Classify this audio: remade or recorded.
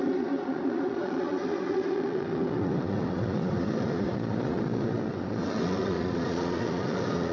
remade